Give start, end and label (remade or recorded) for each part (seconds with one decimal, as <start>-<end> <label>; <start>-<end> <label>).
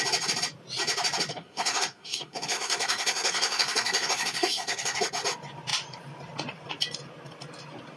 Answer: 0.0-1.3 recorded; 1.3-5.0 remade; 5.0-8.0 recorded